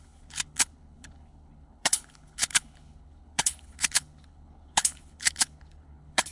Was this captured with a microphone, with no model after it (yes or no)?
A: no